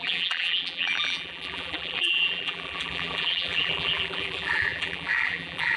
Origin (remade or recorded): remade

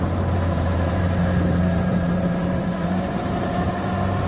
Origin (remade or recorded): remade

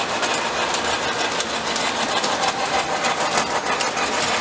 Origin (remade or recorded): recorded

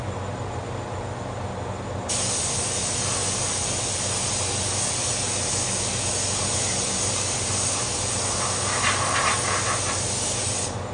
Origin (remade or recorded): recorded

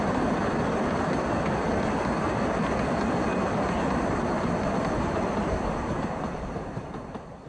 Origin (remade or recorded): recorded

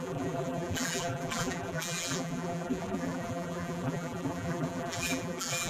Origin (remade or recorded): remade